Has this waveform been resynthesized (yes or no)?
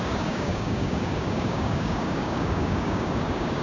yes